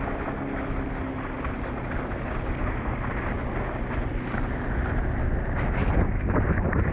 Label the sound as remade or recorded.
recorded